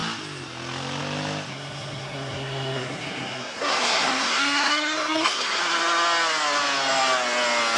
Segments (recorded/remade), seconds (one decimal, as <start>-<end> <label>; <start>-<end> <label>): 0.0-1.5 recorded; 1.5-5.6 remade; 5.6-7.8 recorded